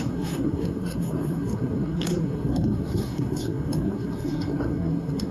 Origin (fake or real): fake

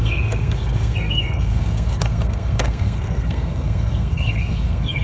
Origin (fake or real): fake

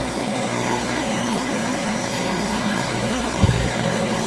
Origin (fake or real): fake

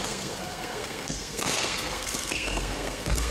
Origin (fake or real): fake